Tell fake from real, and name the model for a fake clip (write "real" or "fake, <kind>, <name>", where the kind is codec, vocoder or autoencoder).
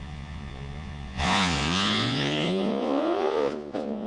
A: fake, vocoder, Vocos